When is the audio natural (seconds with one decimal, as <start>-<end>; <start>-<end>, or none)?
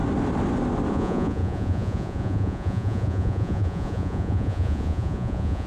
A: 0.0-0.9